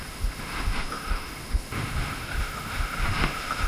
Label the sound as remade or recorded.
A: remade